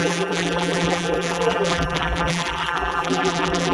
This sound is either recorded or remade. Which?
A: remade